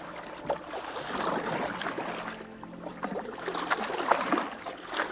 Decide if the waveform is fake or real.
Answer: real